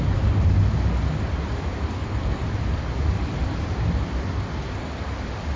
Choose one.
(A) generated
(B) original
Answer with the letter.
B